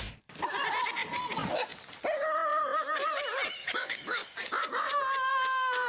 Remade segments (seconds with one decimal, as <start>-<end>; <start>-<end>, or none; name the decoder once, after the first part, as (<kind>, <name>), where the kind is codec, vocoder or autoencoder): 3.6-4.5 (codec, DAC); 5.3-5.9

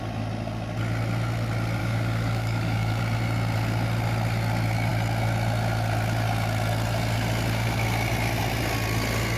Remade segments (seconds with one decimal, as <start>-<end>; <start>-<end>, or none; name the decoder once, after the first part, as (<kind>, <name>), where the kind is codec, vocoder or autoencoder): 1.8-3.0 (codec, DAC)